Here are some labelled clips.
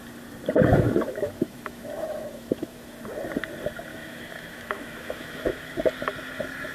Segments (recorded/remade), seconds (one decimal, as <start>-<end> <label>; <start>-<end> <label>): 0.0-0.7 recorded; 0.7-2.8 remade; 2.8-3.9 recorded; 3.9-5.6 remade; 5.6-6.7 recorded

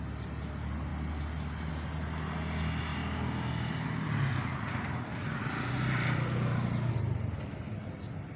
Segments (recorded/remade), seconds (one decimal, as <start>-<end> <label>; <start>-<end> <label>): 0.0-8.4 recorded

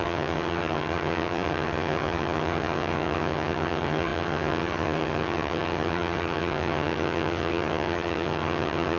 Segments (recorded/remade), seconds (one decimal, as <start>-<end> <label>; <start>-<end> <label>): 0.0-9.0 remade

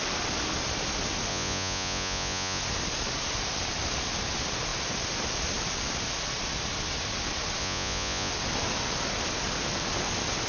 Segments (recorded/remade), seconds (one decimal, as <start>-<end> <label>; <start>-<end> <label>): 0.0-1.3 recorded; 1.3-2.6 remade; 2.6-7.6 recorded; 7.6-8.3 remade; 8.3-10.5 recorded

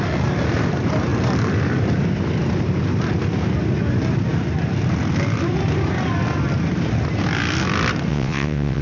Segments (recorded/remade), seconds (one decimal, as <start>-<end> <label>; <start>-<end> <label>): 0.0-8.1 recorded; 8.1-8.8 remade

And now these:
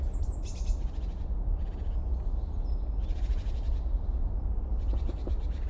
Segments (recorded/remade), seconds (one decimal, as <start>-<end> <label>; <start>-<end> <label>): 0.0-5.7 recorded

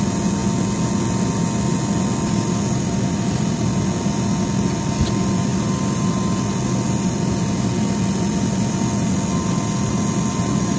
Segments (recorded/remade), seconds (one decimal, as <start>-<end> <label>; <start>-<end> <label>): 0.0-10.8 recorded

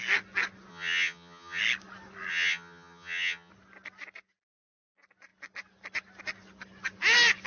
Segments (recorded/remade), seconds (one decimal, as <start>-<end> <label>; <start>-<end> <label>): 0.0-0.7 recorded; 0.7-1.6 remade; 1.6-2.3 recorded; 2.3-3.5 remade; 3.5-7.5 recorded